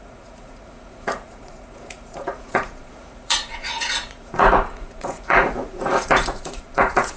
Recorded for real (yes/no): no